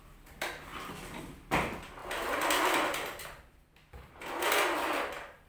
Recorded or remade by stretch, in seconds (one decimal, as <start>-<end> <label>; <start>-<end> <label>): 0.0-5.5 recorded